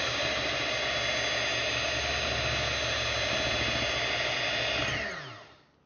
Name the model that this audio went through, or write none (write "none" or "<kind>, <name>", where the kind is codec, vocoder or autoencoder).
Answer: none